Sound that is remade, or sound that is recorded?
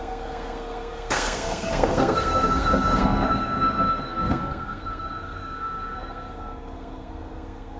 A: remade